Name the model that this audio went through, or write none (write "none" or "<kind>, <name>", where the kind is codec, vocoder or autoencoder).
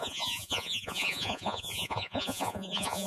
vocoder, Vocos